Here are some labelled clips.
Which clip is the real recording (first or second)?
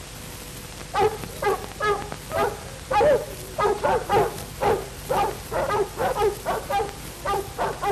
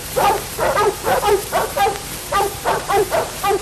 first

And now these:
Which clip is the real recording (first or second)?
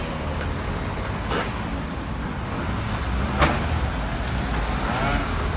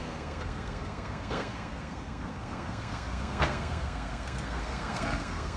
first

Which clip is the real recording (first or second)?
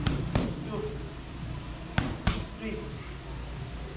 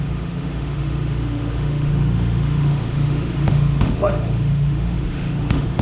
first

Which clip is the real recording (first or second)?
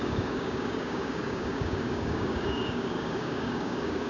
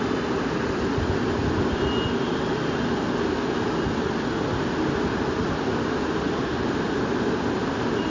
second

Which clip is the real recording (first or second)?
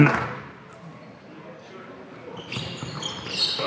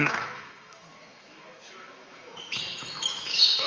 first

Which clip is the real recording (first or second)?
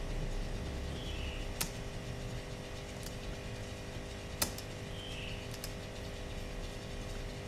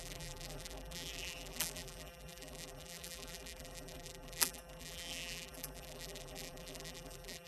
first